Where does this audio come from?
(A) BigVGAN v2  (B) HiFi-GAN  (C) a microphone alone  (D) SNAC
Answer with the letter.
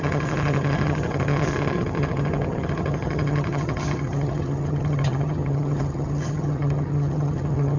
B